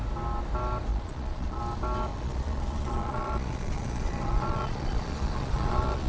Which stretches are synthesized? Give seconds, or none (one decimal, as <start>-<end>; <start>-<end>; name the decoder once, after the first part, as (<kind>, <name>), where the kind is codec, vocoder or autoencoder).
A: 0.9-1.6 (vocoder, Vocos); 2.1-6.1

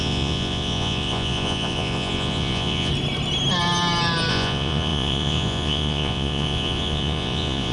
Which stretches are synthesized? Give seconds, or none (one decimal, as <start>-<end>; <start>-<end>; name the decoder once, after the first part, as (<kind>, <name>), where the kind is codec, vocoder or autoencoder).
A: 0.0-2.9 (vocoder, Vocos); 4.3-7.7

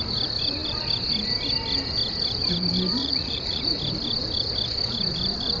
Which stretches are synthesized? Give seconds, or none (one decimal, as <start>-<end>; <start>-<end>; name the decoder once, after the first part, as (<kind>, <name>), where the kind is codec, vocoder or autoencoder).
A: 3.0-3.6 (vocoder, Vocos)

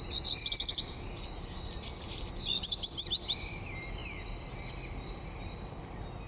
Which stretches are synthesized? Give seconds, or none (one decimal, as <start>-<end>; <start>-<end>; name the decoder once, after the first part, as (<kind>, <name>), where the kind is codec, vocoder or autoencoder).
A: none